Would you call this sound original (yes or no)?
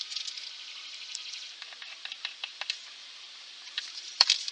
no